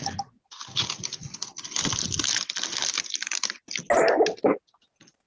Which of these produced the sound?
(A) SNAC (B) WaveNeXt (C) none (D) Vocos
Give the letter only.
C